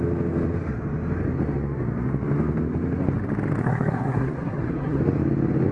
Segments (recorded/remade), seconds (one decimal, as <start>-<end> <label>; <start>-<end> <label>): 0.0-3.6 recorded; 3.6-5.0 remade; 5.0-5.7 recorded